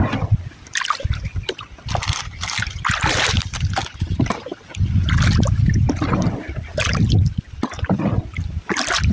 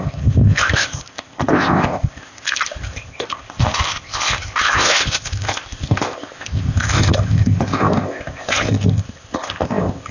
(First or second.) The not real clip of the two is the second